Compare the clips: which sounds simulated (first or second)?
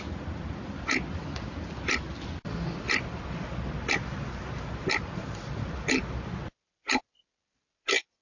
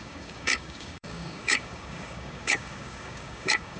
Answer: second